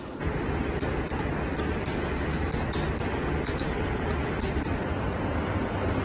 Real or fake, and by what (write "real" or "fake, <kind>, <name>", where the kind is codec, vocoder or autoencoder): real